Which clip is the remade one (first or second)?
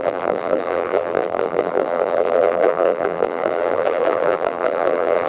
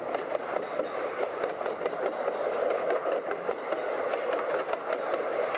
first